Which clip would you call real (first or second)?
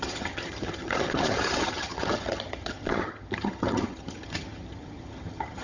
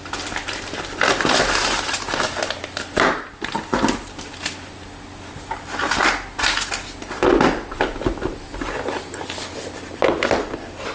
second